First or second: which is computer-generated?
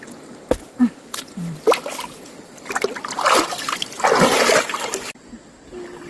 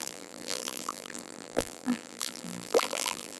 second